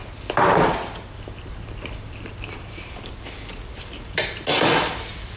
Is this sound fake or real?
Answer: fake